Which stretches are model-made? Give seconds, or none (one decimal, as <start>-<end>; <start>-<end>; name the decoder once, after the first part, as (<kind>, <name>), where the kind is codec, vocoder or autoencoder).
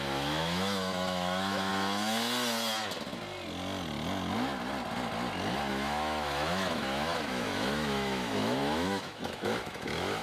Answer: 0.0-1.7 (autoencoder, DAC-VAE); 5.7-10.2